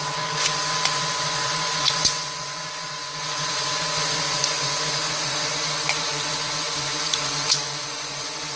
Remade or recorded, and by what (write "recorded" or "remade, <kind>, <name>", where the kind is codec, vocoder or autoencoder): remade, vocoder, Vocos